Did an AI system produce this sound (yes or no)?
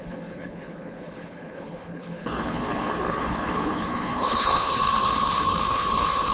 yes